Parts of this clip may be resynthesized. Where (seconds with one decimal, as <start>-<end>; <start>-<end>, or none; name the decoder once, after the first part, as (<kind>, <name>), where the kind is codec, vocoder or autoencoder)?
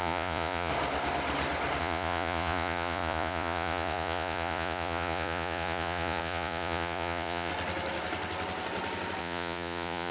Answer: 0.0-0.7 (vocoder, Vocos); 1.8-7.5; 9.2-10.1